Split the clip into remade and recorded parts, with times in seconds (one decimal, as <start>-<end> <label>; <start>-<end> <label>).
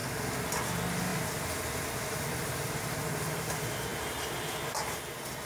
0.0-1.1 recorded; 1.1-3.0 remade; 3.0-5.5 recorded